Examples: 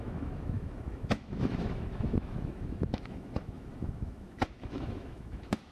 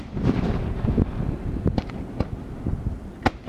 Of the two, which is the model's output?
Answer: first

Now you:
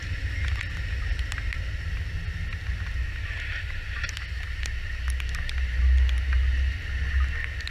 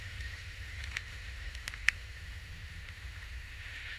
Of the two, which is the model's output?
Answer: second